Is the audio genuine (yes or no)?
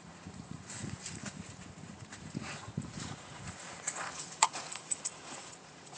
no